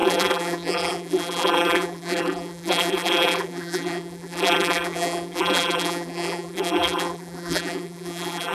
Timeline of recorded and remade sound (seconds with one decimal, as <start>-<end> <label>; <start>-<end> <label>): 0.0-8.5 remade

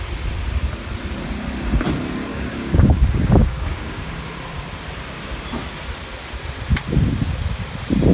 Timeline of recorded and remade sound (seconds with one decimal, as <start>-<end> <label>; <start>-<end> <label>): 0.0-2.3 recorded; 2.3-4.1 remade; 4.1-8.1 recorded